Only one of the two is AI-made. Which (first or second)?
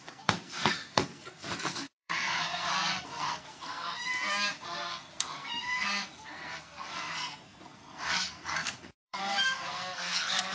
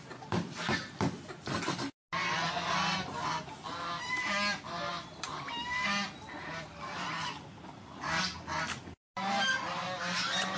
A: first